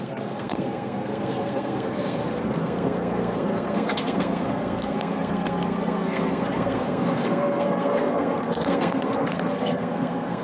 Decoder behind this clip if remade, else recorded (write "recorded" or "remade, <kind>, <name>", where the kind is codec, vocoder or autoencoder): remade, codec, SNAC